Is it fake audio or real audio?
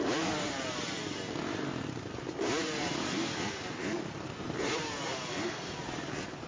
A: fake